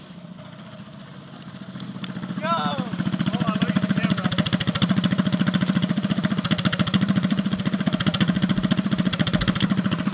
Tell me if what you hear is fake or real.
fake